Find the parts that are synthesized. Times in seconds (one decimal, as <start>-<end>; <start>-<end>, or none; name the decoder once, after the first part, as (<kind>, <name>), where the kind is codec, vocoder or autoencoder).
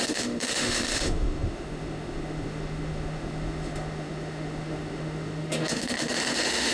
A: 0.0-6.7 (autoencoder, DAC-VAE)